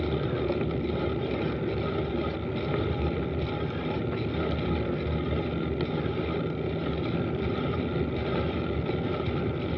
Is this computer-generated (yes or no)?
no